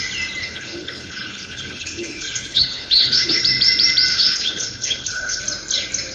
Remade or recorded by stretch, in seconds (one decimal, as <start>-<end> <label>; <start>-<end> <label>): 0.0-0.4 recorded; 0.4-3.4 remade; 3.4-4.1 recorded; 4.1-5.4 remade; 5.4-6.1 recorded